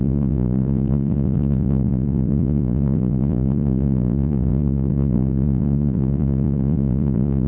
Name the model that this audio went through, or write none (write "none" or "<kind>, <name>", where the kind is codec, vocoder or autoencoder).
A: vocoder, Vocos